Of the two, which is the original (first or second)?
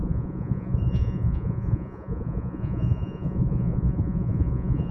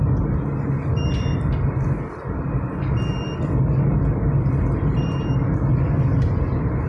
second